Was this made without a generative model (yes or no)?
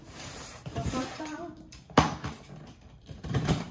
no